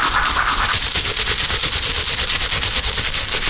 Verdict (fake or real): real